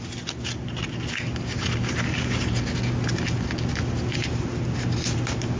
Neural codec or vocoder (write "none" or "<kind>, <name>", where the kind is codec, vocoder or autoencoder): none